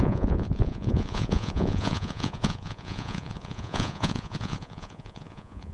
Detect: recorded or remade remade